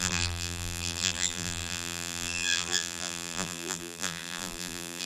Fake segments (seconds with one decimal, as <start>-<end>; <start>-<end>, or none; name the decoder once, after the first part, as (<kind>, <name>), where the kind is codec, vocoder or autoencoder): 0.0-5.0 (vocoder, BigVGAN v2)